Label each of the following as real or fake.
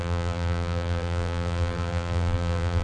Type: fake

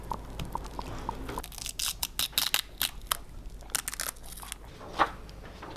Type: real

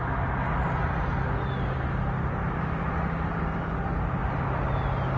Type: real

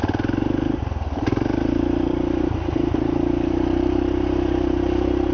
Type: fake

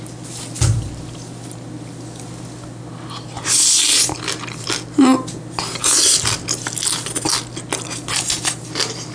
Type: real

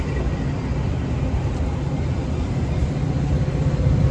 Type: fake